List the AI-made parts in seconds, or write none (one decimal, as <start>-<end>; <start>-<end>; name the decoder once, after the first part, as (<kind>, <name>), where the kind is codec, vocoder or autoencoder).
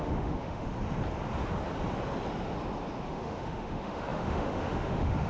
0.0-0.7 (autoencoder, DAC-VAE); 3.0-5.3